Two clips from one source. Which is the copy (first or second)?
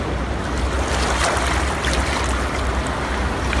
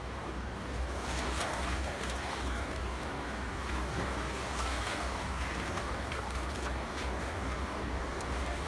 second